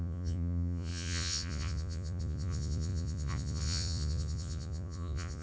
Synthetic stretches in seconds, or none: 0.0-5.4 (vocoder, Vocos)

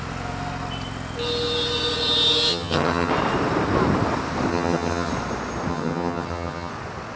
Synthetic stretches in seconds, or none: 2.5-3.1 (vocoder, HiFi-GAN); 4.5-5.1; 5.7-6.7

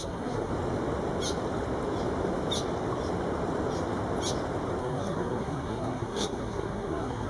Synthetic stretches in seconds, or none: 0.0-0.5 (codec, SNAC); 4.8-7.3

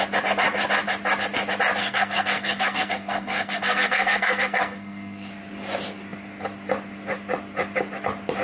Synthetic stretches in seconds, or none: 1.8-5.3 (codec, SNAC)